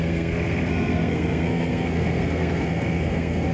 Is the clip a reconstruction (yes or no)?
yes